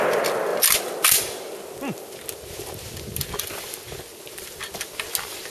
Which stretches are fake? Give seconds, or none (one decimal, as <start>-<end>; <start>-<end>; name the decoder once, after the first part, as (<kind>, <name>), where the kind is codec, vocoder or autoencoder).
none